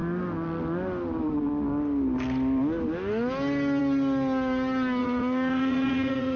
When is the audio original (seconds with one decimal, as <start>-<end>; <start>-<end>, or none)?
0.0-5.0